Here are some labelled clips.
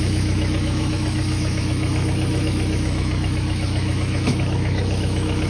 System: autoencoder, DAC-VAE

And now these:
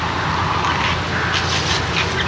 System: none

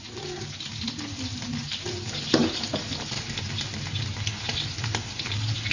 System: none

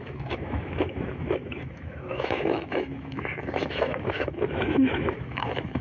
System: autoencoder, DAC-VAE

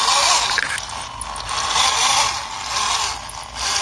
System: none